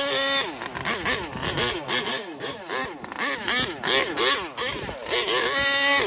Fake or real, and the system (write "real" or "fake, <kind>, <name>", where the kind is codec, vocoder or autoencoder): real